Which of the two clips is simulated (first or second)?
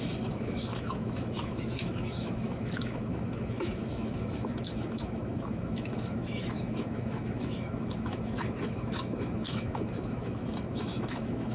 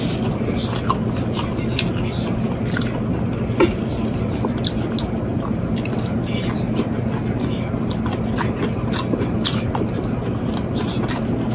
first